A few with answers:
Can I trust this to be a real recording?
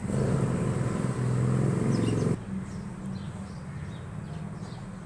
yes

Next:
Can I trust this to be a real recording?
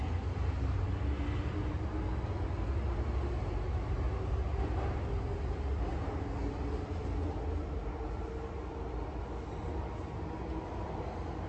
yes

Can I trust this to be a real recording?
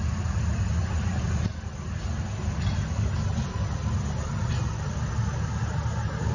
yes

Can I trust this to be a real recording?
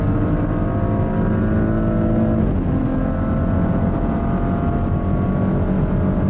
yes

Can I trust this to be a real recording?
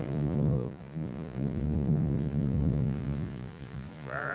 no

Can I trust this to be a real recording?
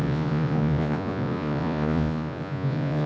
no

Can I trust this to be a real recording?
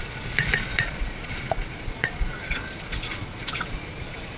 no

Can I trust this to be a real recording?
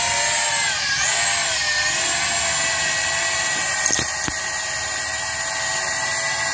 yes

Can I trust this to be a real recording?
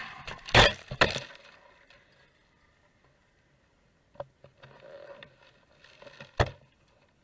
yes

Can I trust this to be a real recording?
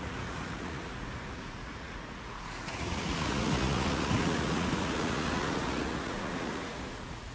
no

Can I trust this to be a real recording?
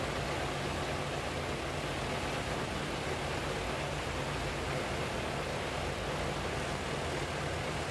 yes